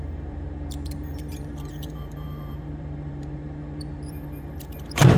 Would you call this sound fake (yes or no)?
yes